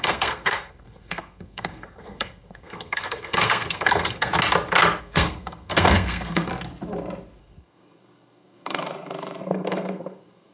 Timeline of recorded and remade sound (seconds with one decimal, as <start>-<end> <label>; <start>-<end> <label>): 0.0-4.3 remade; 4.3-5.0 recorded; 5.0-6.5 remade; 6.5-7.4 recorded; 7.4-10.5 remade